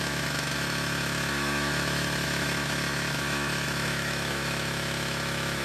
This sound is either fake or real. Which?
fake